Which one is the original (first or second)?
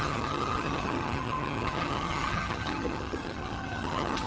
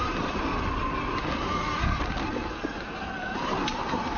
second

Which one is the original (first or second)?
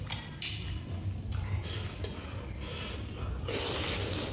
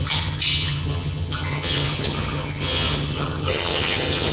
first